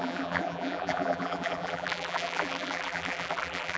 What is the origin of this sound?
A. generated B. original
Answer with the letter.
A